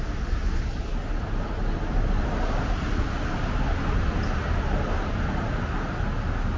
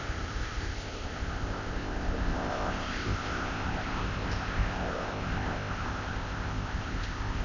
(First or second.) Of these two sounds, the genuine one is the first